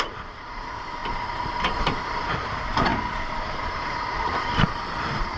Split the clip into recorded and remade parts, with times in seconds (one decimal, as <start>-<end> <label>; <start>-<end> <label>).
0.0-5.4 remade